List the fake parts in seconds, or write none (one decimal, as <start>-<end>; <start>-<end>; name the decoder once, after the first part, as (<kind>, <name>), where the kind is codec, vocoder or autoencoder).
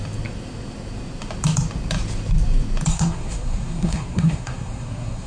2.9-5.3 (codec, SNAC)